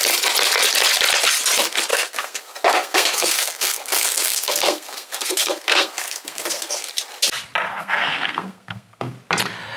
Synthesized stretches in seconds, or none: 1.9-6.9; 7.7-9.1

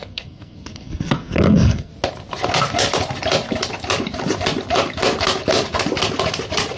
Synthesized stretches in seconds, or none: 0.0-1.9

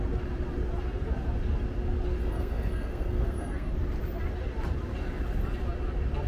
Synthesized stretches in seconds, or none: 2.2-3.7

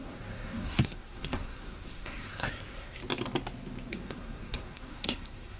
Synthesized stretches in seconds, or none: 0.0-3.0; 3.9-5.6

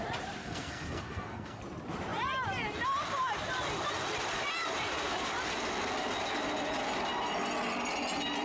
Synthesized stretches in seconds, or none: 0.4-1.6

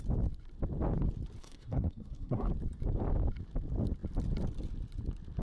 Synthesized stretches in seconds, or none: 1.4-2.5